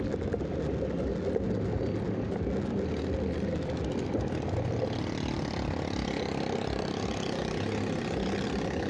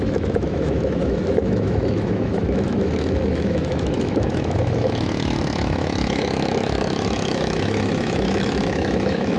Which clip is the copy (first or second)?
second